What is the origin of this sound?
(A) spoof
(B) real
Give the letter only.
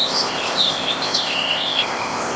A